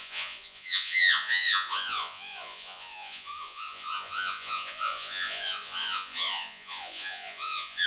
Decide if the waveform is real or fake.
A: fake